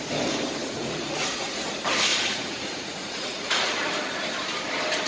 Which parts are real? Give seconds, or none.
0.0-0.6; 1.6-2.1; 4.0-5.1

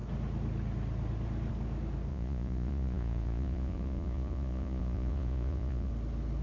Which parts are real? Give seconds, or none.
0.0-2.1; 5.9-6.4

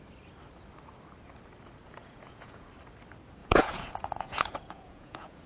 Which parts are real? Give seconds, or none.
0.0-1.8; 2.7-3.4

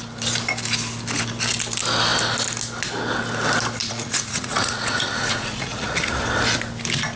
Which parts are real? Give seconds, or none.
0.0-3.8; 6.2-7.2

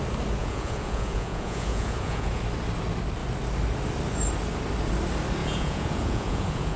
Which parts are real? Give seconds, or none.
0.0-0.4; 2.4-5.4

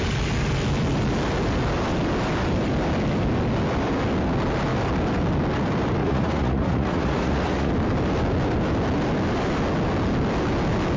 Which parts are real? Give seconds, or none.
0.0-6.0; 7.7-11.0